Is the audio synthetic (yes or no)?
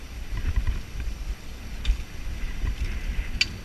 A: no